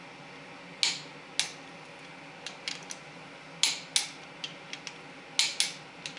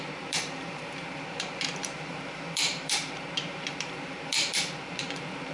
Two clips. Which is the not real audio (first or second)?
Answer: second